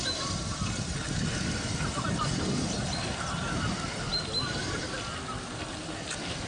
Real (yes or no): yes